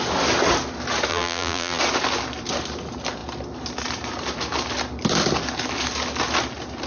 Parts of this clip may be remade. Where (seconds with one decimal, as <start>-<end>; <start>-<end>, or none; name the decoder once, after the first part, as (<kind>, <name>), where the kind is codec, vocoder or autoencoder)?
1.1-1.8 (vocoder, BigVGAN v2)